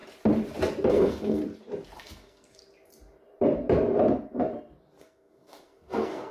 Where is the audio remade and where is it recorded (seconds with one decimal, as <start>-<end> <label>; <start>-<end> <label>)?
0.0-0.9 recorded; 0.9-1.4 remade; 1.4-2.0 recorded; 2.0-2.6 remade; 2.6-5.0 recorded; 5.0-6.3 remade